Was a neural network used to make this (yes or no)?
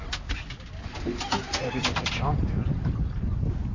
no